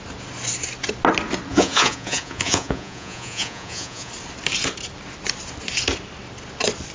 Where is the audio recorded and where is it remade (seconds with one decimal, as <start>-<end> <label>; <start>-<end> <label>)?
0.0-1.5 recorded; 1.5-4.1 remade; 4.1-6.9 recorded